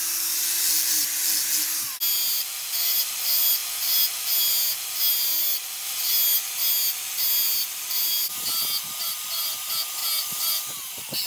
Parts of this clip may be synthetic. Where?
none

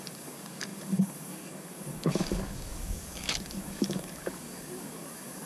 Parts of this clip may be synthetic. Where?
0.0-5.5 (codec, DAC)

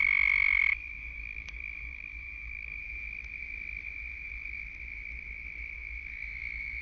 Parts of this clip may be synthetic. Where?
0.7-2.8 (codec, DAC)